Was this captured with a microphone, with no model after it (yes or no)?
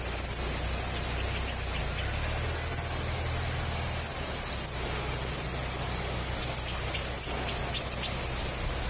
yes